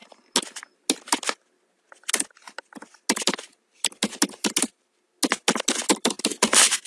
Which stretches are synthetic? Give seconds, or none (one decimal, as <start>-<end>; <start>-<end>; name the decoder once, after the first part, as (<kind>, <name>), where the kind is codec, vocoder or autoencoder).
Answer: 5.9-6.9 (vocoder, BigVGAN v2)